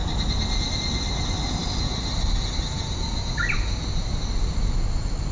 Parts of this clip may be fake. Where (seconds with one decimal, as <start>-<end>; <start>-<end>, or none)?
none